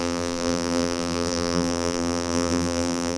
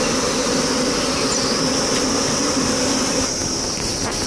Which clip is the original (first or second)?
second